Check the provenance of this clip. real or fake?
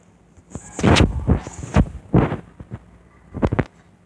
real